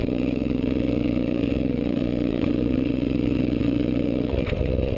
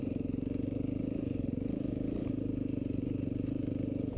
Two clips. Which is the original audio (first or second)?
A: second